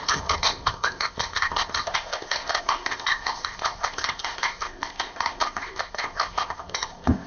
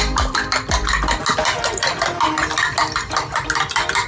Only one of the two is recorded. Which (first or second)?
second